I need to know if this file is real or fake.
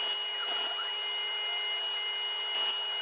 real